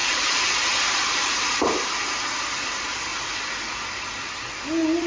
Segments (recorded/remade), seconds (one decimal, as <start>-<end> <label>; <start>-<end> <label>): 0.0-3.1 remade; 3.1-4.3 recorded; 4.3-5.1 remade